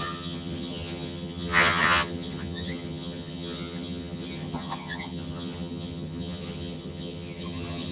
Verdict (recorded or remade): remade